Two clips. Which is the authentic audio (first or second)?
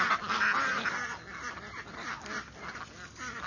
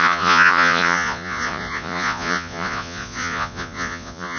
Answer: first